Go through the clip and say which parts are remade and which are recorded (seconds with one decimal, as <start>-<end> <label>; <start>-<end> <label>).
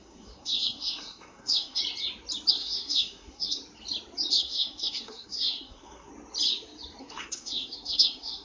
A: 0.0-1.8 remade; 1.8-2.5 recorded; 2.5-3.6 remade; 3.6-4.3 recorded; 4.3-6.1 remade; 6.1-7.0 recorded; 7.0-8.4 remade